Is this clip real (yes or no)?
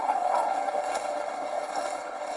no